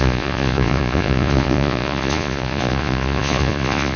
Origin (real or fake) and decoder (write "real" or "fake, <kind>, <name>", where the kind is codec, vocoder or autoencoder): fake, vocoder, Vocos